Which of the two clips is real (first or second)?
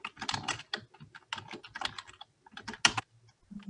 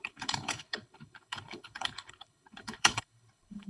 first